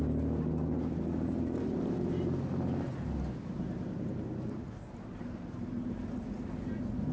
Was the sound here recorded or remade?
recorded